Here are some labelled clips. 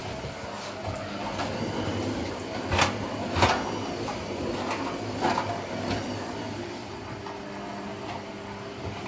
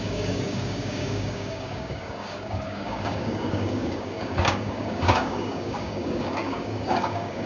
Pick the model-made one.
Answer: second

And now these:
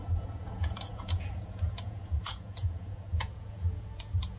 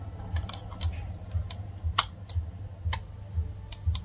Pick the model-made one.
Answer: first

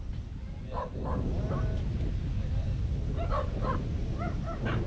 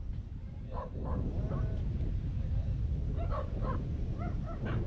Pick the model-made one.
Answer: second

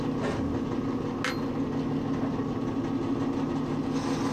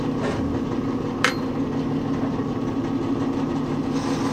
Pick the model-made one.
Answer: second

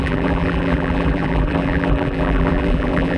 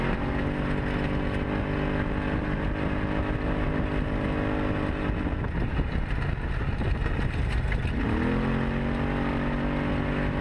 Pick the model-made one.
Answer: first